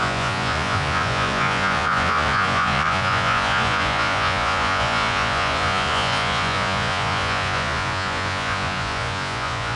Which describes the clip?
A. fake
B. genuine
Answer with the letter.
A